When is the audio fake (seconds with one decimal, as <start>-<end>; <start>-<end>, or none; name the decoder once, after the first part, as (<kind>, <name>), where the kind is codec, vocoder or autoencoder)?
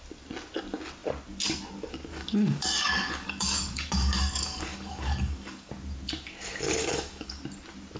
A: 2.1-5.7 (codec, DAC); 6.8-7.4